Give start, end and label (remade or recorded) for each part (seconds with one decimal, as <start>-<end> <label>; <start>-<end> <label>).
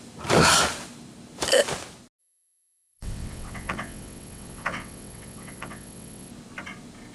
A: 0.0-2.2 recorded; 2.2-6.3 remade; 6.3-7.1 recorded